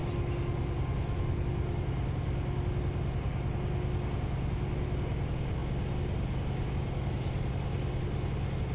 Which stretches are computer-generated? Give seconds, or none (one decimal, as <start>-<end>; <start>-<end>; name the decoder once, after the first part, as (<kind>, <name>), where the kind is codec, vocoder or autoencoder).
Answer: none